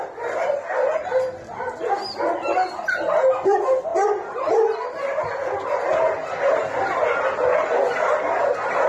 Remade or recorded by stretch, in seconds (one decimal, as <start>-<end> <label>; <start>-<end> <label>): 0.0-8.9 recorded

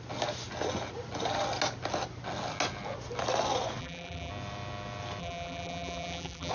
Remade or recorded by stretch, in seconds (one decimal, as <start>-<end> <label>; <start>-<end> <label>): 0.0-3.8 recorded; 3.8-4.3 remade; 4.3-5.2 recorded; 5.2-6.5 remade

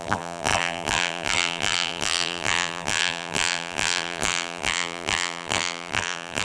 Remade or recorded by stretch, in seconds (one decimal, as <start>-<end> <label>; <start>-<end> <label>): 0.0-6.4 remade

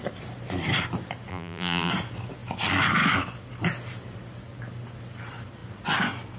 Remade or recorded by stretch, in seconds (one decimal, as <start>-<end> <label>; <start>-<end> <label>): 0.0-1.3 recorded; 1.3-1.9 remade; 1.9-6.4 recorded

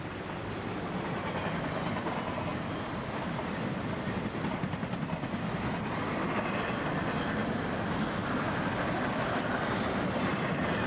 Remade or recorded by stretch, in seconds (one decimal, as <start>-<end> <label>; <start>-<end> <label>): 0.0-7.4 recorded; 7.4-9.8 remade; 9.8-10.9 recorded